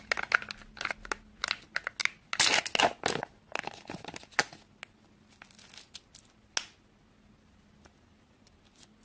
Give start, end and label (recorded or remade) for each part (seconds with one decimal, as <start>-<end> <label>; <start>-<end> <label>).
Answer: 0.0-9.0 recorded